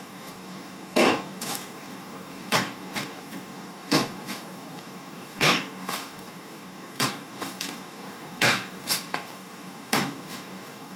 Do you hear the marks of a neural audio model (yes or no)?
yes